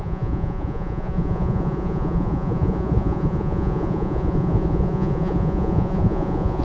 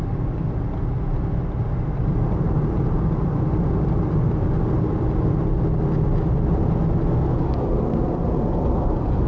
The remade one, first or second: first